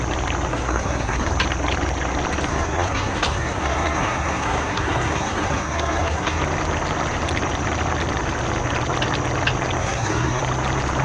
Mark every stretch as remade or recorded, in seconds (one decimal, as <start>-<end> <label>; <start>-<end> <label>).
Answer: 0.0-0.5 recorded; 0.5-1.3 remade; 1.3-2.5 recorded; 2.5-6.4 remade; 6.4-9.8 recorded; 9.8-10.4 remade; 10.4-11.0 recorded